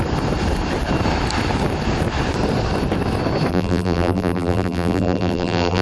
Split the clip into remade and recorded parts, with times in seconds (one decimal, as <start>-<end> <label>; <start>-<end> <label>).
0.0-3.5 recorded; 3.5-5.8 remade